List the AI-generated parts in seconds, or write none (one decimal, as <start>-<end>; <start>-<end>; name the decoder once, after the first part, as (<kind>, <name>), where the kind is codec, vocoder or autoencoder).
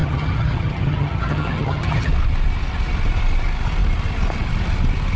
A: 0.0-2.1 (vocoder, HiFi-GAN)